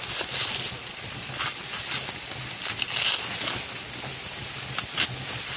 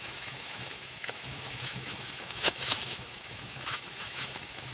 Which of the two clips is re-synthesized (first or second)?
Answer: second